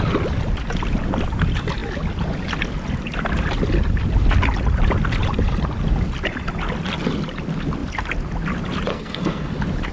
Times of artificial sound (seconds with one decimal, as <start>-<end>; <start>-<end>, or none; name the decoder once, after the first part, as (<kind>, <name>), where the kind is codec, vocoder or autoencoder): 8.9-9.5 (codec, SNAC)